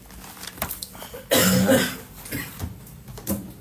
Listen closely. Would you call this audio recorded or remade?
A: recorded